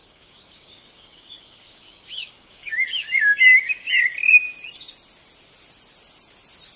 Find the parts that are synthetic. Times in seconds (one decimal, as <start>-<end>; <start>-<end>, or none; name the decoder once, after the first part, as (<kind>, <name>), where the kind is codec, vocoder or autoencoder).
0.0-3.9 (codec, DAC)